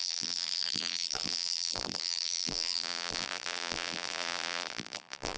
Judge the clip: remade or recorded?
remade